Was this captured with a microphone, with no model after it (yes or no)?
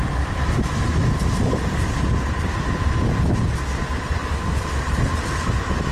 no